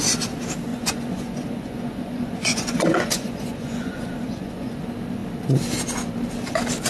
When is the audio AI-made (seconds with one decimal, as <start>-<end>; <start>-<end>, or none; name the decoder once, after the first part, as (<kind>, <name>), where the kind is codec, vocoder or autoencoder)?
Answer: 0.7-4.8 (vocoder, Vocos)